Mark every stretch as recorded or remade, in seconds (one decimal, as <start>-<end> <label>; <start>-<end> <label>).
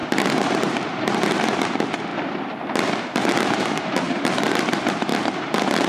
0.0-2.1 remade; 2.1-3.6 recorded; 3.6-5.1 remade; 5.1-5.9 recorded